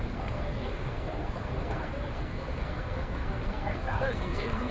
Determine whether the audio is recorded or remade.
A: remade